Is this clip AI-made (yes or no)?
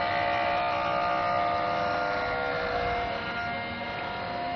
no